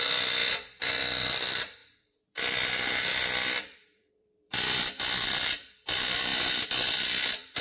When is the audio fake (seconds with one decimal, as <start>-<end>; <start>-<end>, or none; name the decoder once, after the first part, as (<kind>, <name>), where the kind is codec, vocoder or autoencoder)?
0.0-0.4 (vocoder, BigVGAN v2); 1.0-6.3; 6.9-7.6